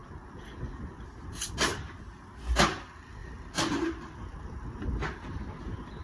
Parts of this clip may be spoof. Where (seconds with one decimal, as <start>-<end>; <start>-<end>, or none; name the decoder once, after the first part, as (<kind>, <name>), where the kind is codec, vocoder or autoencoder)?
none